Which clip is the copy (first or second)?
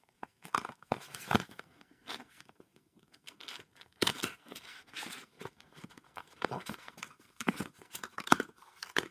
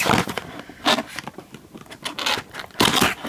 first